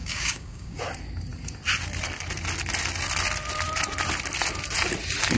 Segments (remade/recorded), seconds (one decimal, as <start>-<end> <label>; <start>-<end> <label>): 0.0-0.8 remade; 0.8-5.4 recorded